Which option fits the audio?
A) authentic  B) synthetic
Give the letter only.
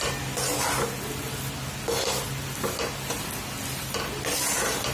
A